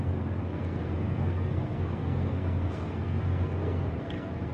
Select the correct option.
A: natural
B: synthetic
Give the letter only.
B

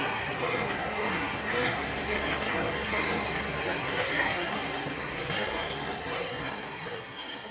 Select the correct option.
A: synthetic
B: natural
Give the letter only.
A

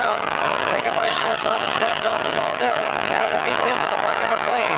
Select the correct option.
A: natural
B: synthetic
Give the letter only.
B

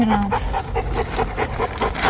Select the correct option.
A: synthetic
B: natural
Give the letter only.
B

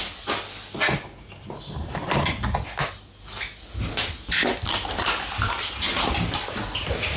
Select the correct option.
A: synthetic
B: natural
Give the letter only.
B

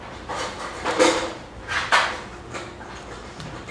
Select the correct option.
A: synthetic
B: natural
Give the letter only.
A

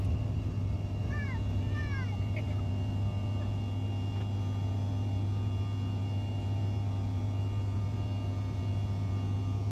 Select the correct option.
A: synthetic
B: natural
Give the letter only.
B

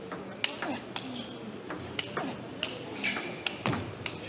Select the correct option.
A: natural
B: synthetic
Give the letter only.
A